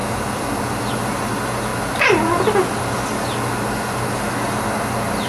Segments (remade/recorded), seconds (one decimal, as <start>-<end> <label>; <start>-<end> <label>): 0.0-5.3 recorded